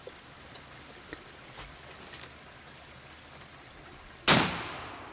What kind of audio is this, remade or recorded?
recorded